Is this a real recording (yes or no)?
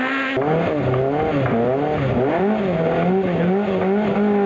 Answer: yes